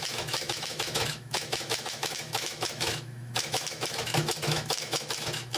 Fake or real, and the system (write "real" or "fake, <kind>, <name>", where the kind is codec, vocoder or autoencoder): fake, autoencoder, DAC-VAE